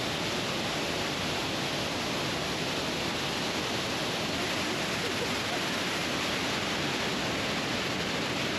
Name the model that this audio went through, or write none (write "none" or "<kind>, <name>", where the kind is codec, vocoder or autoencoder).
none